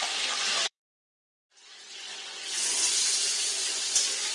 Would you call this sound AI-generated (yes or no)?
yes